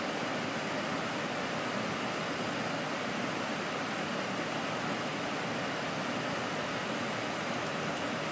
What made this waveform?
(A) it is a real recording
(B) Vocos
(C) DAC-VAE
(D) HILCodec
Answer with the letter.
A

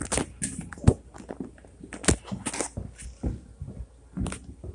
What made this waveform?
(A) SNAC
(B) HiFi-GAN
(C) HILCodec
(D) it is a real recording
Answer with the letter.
D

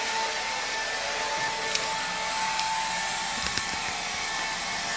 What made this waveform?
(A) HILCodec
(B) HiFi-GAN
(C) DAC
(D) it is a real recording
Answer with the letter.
D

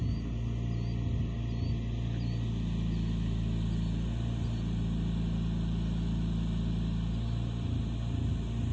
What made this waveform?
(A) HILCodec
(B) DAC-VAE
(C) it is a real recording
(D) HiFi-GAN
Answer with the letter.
C